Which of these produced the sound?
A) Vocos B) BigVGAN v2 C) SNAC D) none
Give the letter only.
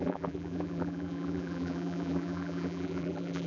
B